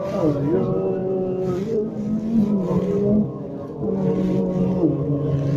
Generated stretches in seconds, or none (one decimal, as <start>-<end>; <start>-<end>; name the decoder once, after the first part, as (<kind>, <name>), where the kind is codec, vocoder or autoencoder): none

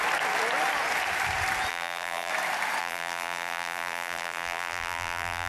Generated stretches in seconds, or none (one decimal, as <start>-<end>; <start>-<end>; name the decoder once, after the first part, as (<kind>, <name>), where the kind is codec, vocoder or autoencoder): 1.7-2.3 (vocoder, BigVGAN v2); 2.8-5.5

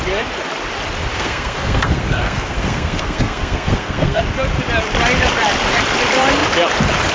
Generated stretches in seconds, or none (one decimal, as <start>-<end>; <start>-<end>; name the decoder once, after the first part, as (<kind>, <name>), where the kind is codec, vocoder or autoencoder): 1.1-4.2 (codec, SNAC)

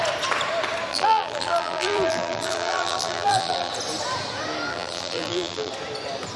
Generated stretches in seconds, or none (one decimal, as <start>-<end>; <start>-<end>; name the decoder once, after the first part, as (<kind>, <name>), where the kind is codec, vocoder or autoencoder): 0.9-3.7 (vocoder, BigVGAN v2); 4.7-5.7

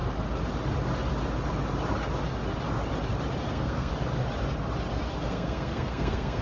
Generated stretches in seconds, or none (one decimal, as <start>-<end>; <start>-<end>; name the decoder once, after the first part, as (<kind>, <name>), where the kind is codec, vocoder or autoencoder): 3.5-3.9 (codec, SNAC); 5.2-6.4

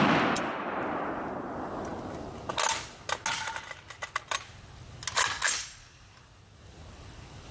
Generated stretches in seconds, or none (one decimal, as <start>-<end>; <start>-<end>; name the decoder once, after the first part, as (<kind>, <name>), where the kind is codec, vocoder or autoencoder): none